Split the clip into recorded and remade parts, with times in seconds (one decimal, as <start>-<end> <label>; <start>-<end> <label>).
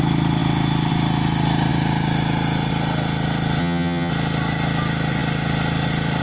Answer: 0.0-3.6 recorded; 3.6-4.1 remade; 4.1-6.2 recorded